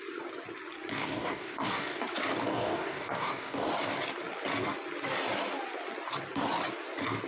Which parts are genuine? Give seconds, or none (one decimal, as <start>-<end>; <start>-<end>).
0.0-0.9; 2.0-2.5; 3.7-7.3